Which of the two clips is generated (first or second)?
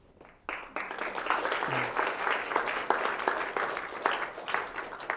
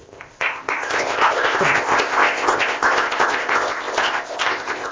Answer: second